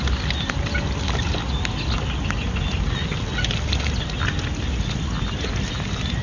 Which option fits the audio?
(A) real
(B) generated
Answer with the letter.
A